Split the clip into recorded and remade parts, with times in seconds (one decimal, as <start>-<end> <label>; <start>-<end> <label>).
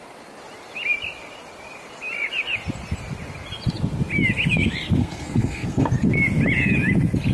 0.0-5.0 recorded; 5.0-5.9 remade; 5.9-7.3 recorded